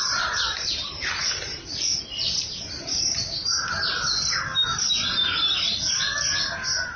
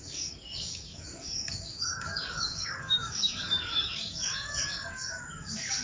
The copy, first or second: second